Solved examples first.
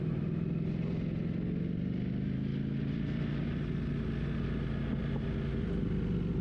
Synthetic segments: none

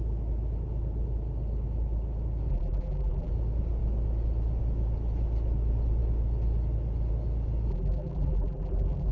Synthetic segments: 2.5-3.3 (vocoder, BigVGAN v2); 7.7-9.1

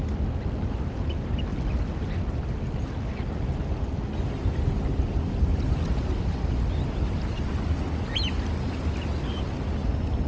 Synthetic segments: none

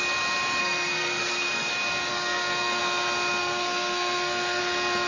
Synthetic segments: 0.6-1.7 (codec, SNAC); 2.1-2.8; 3.4-4.6